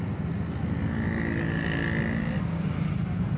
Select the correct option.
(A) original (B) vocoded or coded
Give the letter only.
A